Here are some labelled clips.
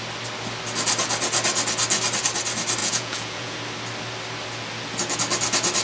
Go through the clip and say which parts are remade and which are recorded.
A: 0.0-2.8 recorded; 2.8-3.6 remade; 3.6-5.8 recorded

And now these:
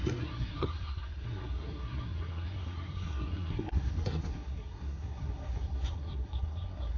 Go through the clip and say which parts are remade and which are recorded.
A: 0.0-7.0 remade

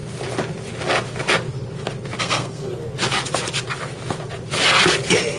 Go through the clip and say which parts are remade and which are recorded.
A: 0.0-2.2 recorded; 2.2-2.7 remade; 2.7-5.4 recorded

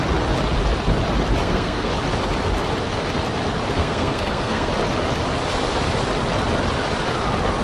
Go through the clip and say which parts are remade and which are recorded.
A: 0.0-1.4 recorded; 1.4-1.9 remade; 1.9-3.8 recorded; 3.8-4.7 remade; 4.7-7.6 recorded

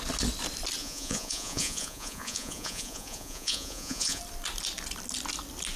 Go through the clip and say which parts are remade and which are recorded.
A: 0.0-0.8 recorded; 0.8-4.2 remade; 4.2-5.8 recorded

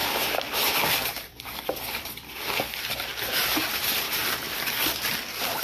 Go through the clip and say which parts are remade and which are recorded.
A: 0.0-3.4 remade; 3.4-4.2 recorded; 4.2-5.1 remade; 5.1-5.6 recorded